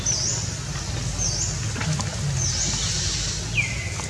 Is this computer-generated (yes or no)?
no